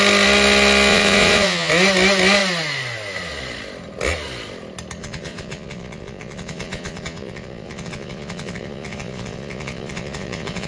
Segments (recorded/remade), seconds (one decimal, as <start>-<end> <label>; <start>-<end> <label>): 0.0-0.9 recorded; 0.9-1.7 remade; 1.7-5.0 recorded; 5.0-10.7 remade